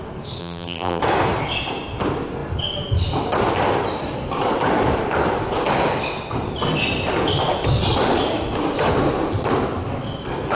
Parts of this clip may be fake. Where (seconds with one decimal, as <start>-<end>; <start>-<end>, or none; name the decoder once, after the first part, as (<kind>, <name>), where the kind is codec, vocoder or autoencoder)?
0.4-1.0 (vocoder, BigVGAN v2)